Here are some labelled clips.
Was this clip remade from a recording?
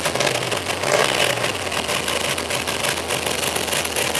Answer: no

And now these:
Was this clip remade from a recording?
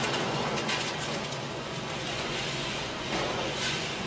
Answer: yes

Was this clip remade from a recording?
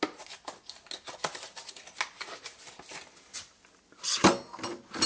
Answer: no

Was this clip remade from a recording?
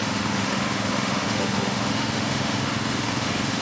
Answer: yes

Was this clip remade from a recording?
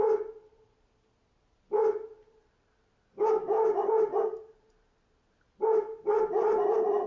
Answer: no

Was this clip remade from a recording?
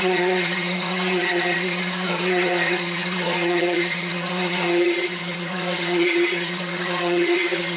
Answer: yes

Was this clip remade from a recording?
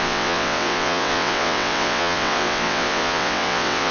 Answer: yes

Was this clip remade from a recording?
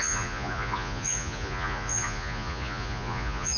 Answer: yes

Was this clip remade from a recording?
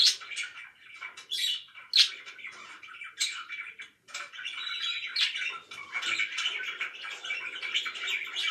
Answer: no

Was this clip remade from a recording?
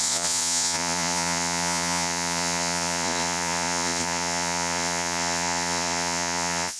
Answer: yes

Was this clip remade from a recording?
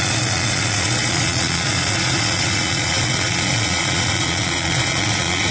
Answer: yes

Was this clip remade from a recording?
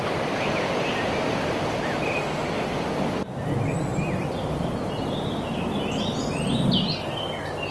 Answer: no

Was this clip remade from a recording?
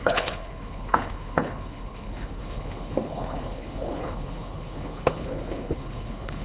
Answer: yes